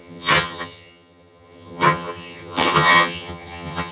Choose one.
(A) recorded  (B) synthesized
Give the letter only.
B